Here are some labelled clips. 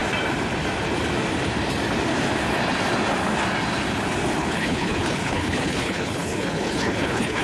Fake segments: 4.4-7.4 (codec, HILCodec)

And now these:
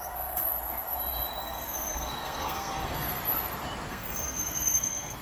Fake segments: 0.0-0.5 (codec, SNAC); 1.4-3.2; 3.9-5.2